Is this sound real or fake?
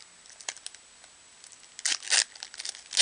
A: real